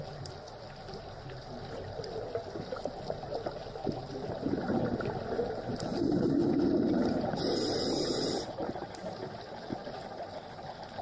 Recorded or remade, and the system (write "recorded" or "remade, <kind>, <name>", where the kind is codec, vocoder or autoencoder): recorded